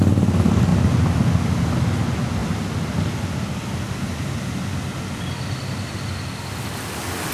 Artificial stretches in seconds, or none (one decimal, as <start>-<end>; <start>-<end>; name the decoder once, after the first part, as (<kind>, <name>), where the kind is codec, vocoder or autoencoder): none